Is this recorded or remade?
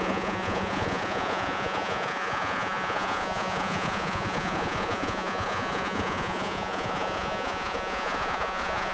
remade